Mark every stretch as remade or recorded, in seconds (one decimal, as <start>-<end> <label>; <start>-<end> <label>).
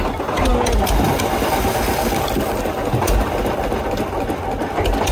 0.0-5.1 recorded